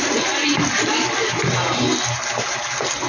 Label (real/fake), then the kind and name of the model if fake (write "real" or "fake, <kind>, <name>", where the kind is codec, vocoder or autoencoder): real